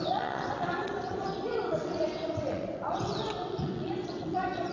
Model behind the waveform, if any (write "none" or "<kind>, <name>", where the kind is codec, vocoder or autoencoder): vocoder, WaveNeXt